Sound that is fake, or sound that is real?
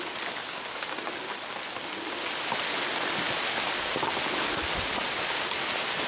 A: real